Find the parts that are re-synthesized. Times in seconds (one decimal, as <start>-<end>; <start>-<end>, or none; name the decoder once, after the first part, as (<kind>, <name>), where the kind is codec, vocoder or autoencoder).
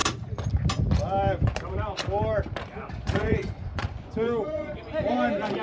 3.0-5.1 (vocoder, Vocos)